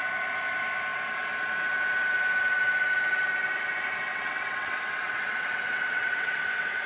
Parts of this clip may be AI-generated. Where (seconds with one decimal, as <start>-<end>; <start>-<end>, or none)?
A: 4.1-6.9